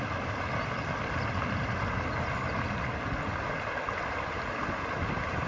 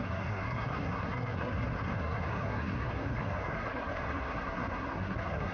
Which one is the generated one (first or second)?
second